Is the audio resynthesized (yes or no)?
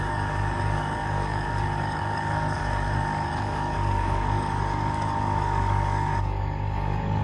yes